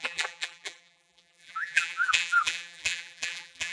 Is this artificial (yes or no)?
yes